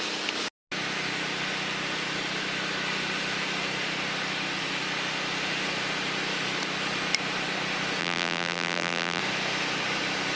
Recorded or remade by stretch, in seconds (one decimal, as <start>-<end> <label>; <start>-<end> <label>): 0.0-8.0 recorded; 8.0-9.2 remade; 9.2-10.4 recorded